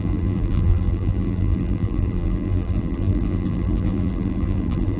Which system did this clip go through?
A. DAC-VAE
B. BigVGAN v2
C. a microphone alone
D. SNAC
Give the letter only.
B